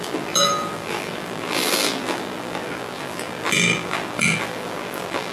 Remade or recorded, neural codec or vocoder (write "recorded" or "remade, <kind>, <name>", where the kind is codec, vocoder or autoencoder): remade, vocoder, BigVGAN v2